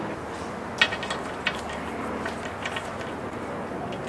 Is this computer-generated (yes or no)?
no